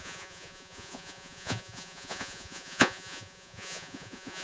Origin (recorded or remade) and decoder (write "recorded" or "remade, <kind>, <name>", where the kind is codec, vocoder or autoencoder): remade, vocoder, Vocos